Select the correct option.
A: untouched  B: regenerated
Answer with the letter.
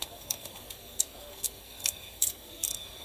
B